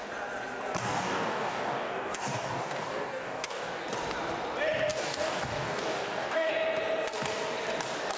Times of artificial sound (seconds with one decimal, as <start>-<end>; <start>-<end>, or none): 0.8-3.8; 4.9-6.5